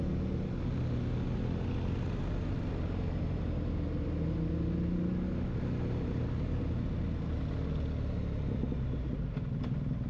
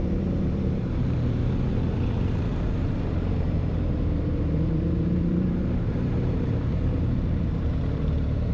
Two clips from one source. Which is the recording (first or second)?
first